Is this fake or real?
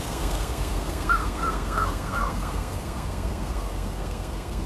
fake